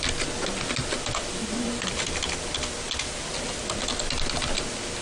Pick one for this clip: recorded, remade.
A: recorded